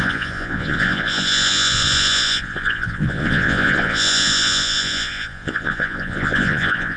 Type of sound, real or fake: fake